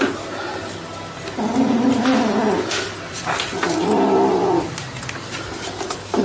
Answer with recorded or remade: recorded